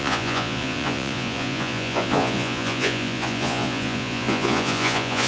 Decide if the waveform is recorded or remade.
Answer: remade